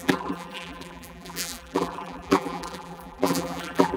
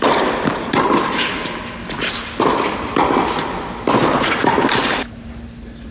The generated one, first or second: first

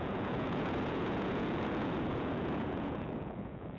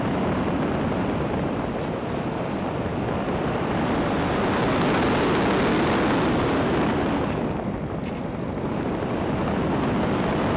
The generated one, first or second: first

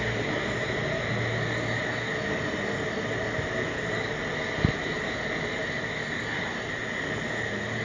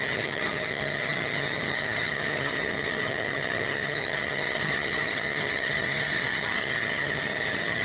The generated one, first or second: second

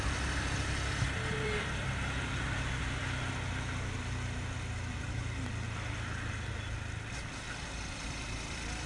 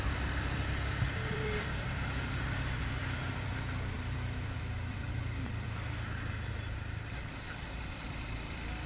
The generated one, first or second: second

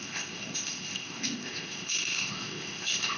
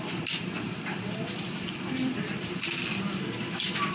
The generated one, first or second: first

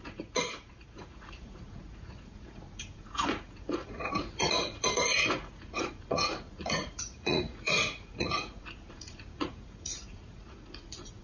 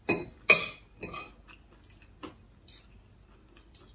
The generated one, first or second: first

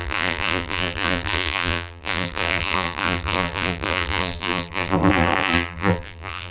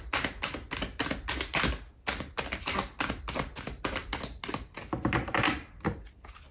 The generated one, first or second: first